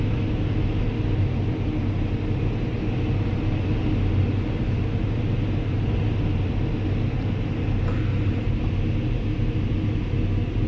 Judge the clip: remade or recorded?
recorded